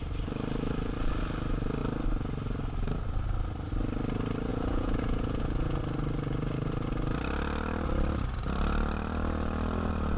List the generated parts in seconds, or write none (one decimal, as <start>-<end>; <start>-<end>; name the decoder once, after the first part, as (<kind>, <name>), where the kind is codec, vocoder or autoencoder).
4.5-5.8 (vocoder, Vocos)